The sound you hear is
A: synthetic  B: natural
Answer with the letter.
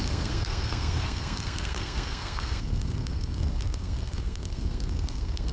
A